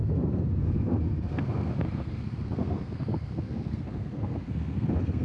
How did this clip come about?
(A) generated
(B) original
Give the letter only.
A